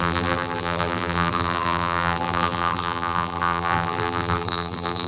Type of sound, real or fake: fake